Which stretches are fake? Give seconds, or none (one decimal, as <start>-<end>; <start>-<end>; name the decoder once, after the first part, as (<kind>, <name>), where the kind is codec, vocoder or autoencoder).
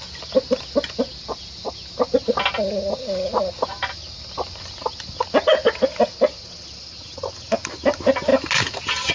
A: none